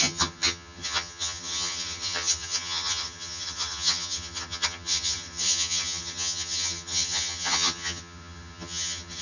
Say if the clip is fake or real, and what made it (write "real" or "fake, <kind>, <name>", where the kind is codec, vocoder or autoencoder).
fake, vocoder, HiFi-GAN